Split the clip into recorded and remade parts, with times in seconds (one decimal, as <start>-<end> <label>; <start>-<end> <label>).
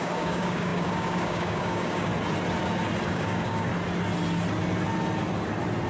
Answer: 0.0-2.1 remade; 2.1-3.1 recorded; 3.1-3.7 remade; 3.7-5.9 recorded